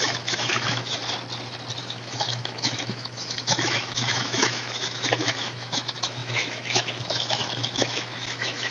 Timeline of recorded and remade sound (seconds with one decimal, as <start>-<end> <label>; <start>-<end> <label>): 0.0-1.0 remade; 1.0-1.8 recorded; 1.8-8.7 remade